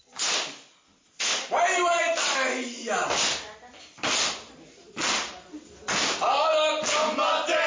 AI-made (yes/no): no